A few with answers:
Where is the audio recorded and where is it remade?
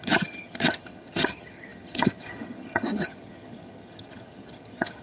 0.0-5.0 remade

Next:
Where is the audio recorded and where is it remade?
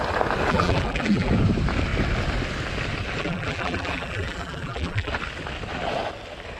0.0-0.5 recorded; 0.5-1.3 remade; 1.3-3.2 recorded; 3.2-5.1 remade; 5.1-6.6 recorded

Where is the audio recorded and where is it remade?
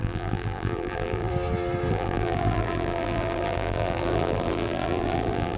0.0-1.3 remade; 1.3-1.9 recorded; 1.9-5.6 remade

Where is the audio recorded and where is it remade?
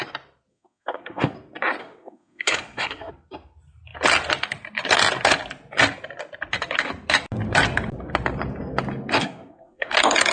0.0-0.5 recorded; 0.5-1.3 remade; 1.3-1.8 recorded; 1.8-3.1 remade; 3.1-9.2 recorded; 9.2-9.9 remade; 9.9-10.3 recorded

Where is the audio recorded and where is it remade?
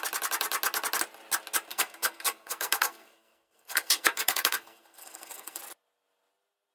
0.0-1.7 recorded; 1.7-5.6 remade; 5.6-6.7 recorded